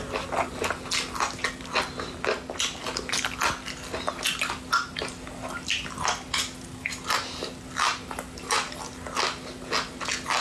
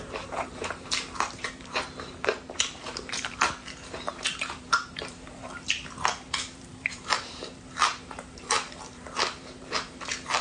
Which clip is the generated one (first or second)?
second